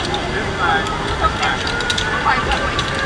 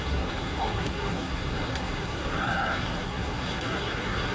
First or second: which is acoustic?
first